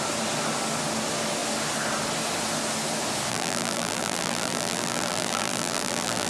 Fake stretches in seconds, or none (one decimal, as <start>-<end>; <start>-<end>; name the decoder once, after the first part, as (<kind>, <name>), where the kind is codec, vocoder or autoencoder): 3.3-6.3 (vocoder, BigVGAN v2)